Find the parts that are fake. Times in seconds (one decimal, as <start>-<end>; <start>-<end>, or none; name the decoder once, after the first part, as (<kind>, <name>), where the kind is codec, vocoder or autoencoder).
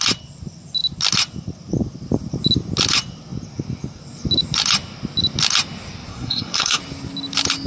6.1-6.8 (codec, SNAC)